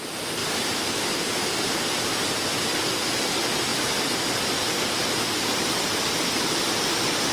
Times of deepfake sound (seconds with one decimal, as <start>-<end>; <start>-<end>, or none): 0.4-1.7